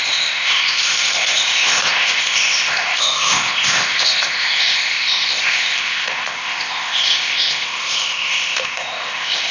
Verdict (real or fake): fake